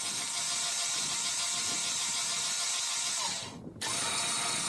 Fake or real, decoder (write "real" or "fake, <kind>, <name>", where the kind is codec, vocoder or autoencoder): real